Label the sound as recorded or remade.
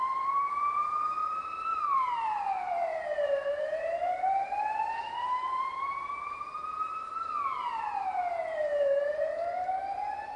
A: remade